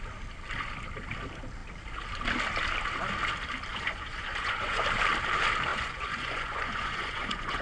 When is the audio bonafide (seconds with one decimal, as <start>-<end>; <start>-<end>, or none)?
0.0-3.7; 4.8-5.7